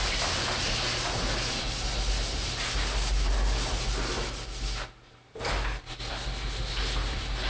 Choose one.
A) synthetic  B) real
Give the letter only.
B